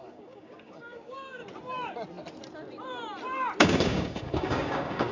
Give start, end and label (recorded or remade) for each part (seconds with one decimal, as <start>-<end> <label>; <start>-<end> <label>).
0.0-1.4 remade; 1.4-3.6 recorded; 3.6-5.1 remade